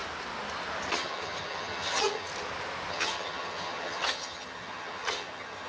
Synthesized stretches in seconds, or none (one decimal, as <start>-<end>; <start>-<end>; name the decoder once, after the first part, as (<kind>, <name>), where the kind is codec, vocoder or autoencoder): 0.9-2.3 (vocoder, HiFi-GAN); 2.9-5.7